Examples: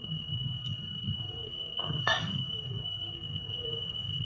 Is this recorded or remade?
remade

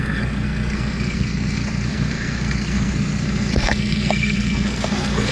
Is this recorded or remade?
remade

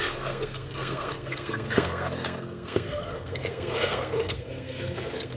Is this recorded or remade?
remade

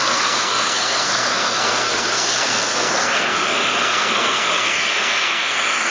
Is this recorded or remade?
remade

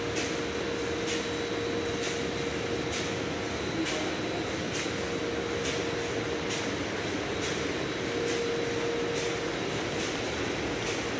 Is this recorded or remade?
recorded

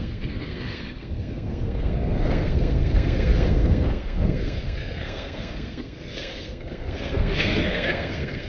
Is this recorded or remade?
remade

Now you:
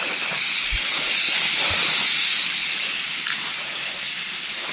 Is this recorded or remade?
recorded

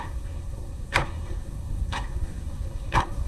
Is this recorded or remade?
remade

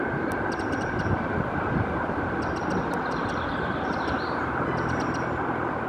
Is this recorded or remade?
recorded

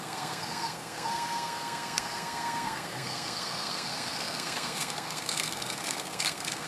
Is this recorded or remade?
remade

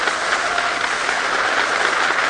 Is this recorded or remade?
recorded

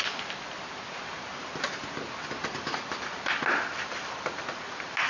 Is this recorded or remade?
recorded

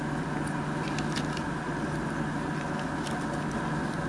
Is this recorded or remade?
recorded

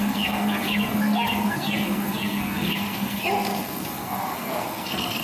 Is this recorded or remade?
remade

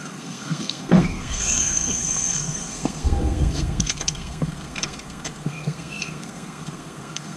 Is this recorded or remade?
remade